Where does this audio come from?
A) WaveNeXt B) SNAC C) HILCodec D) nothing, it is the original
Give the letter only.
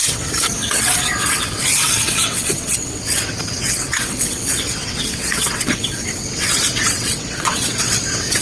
A